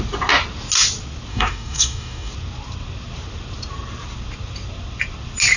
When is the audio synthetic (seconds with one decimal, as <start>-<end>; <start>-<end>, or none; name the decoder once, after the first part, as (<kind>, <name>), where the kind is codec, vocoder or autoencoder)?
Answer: 1.3-2.3 (codec, DAC)